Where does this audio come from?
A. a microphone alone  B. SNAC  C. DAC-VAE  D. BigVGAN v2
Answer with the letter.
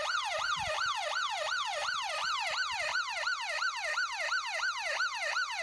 D